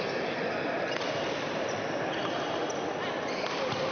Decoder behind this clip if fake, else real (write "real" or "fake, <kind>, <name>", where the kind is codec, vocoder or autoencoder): real